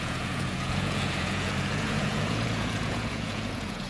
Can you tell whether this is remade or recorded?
remade